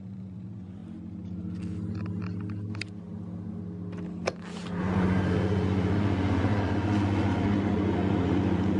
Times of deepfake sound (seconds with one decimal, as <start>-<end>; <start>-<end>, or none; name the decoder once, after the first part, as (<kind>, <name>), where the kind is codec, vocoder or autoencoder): 0.0-0.8 (vocoder, Vocos); 4.8-8.8